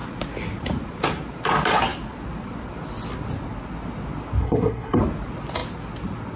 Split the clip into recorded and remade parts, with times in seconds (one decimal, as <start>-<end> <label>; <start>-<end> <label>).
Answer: 0.0-4.4 recorded; 4.4-5.0 remade; 5.0-6.4 recorded